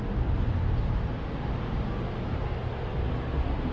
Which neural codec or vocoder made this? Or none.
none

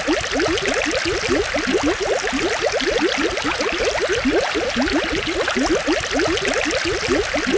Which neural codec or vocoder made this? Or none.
none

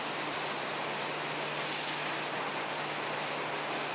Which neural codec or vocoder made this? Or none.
none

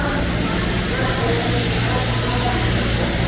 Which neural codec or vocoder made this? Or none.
none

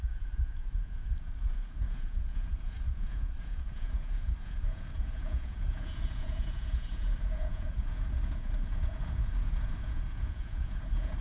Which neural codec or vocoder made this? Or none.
vocoder, Vocos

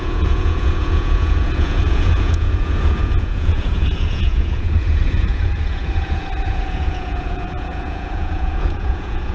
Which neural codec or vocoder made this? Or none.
vocoder, Vocos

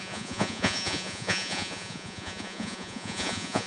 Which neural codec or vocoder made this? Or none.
vocoder, Vocos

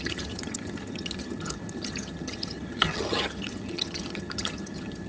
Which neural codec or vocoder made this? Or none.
vocoder, HiFi-GAN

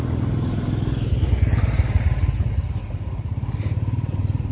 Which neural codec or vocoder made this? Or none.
none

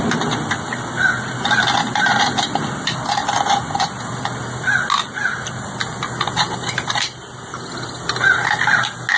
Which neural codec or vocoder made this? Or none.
none